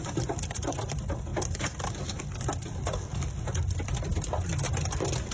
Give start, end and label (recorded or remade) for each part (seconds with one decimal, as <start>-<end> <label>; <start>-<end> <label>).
0.0-5.3 recorded